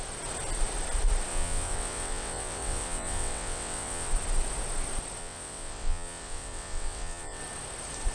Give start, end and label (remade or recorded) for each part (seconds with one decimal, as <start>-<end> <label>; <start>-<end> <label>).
0.0-1.3 recorded; 1.3-4.1 remade; 4.1-5.2 recorded; 5.2-7.4 remade; 7.4-8.1 recorded